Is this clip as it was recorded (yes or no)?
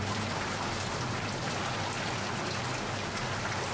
yes